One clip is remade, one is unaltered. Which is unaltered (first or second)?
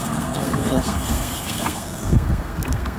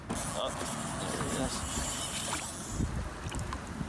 second